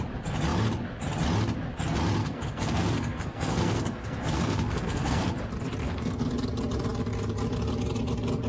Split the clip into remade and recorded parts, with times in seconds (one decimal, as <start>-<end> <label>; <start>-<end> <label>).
0.0-2.2 recorded; 2.2-5.3 remade; 5.3-5.8 recorded; 5.8-6.3 remade; 6.3-8.5 recorded